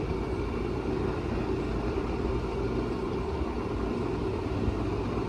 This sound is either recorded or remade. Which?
recorded